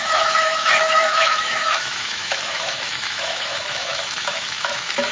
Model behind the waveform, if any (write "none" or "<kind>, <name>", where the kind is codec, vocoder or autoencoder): autoencoder, DAC-VAE